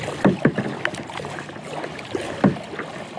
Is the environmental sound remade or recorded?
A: recorded